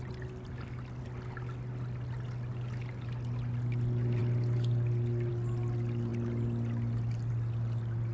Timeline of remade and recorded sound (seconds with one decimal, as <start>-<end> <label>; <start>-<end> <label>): 0.0-8.1 recorded